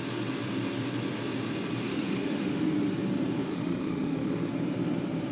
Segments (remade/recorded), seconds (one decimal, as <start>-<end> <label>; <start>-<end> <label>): 0.0-1.9 recorded; 1.9-2.5 remade; 2.5-3.5 recorded; 3.5-4.5 remade; 4.5-5.3 recorded